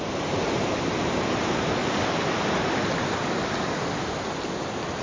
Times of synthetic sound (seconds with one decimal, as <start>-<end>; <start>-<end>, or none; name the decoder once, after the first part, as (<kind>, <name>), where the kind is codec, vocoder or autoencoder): 0.0-1.8 (vocoder, BigVGAN v2)